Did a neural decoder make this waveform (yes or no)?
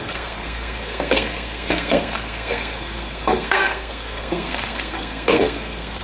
yes